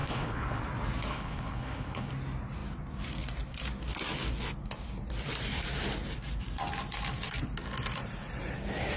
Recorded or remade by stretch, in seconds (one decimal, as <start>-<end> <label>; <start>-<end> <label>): 0.0-0.6 remade; 0.6-1.1 recorded; 1.1-2.1 remade; 2.1-9.0 recorded